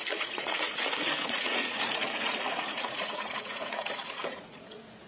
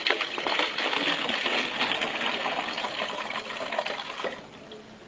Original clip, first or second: second